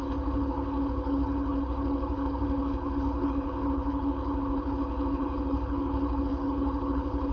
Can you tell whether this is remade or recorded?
remade